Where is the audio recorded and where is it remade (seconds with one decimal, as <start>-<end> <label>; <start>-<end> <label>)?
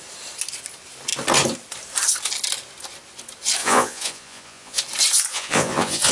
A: 0.0-3.6 recorded; 3.6-4.8 remade; 4.8-5.3 recorded; 5.3-6.1 remade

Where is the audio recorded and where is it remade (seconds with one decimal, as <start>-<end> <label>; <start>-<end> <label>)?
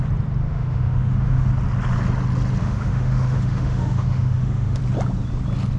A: 0.0-0.4 recorded; 0.4-1.5 remade; 1.5-2.6 recorded; 2.6-4.8 remade; 4.8-5.8 recorded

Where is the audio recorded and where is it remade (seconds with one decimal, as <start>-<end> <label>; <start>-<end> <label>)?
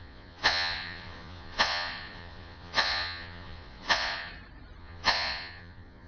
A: 0.0-4.3 remade; 4.3-4.8 recorded; 4.8-6.1 remade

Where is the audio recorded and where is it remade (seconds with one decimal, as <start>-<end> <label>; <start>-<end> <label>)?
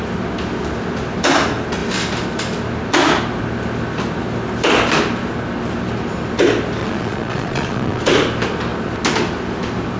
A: 0.0-6.8 recorded; 6.8-8.0 remade; 8.0-10.0 recorded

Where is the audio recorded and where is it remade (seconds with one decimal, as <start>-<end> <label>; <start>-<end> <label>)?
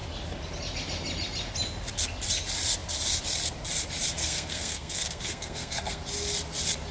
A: 0.0-4.2 recorded; 4.2-6.0 remade; 6.0-6.9 recorded